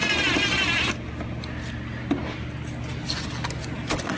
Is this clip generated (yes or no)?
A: no